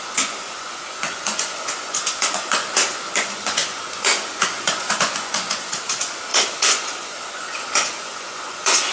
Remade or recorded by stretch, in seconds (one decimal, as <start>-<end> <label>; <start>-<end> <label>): 0.0-8.9 remade